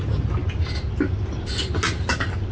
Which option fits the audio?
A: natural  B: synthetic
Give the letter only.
A